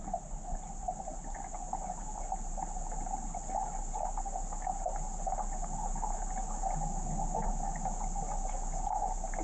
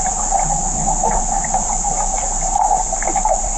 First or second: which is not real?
second